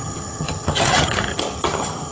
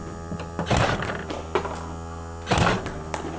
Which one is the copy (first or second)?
first